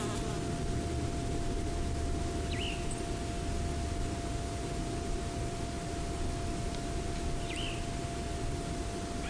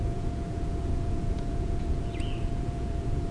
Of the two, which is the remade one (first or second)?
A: second